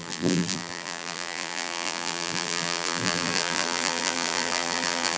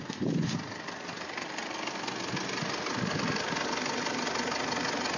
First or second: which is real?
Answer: second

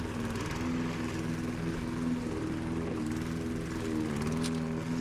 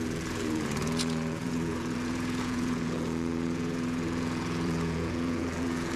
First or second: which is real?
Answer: first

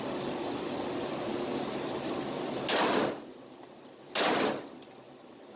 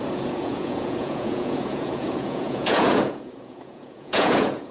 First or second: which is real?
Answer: first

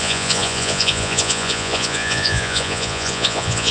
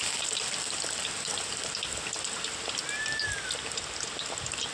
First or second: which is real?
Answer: second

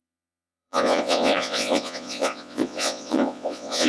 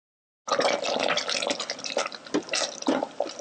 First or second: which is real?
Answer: second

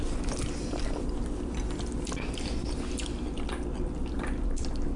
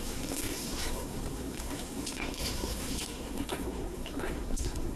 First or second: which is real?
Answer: first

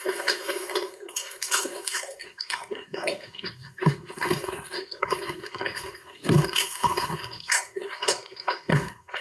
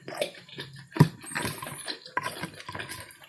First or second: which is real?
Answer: second